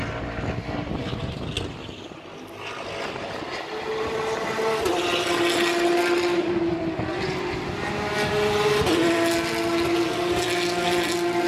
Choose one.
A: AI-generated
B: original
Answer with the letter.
B